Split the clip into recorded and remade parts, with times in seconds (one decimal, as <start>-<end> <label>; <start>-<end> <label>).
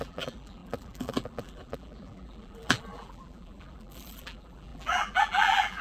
0.0-5.8 remade